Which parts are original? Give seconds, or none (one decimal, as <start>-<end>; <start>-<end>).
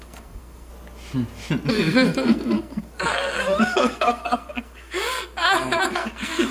0.7-1.7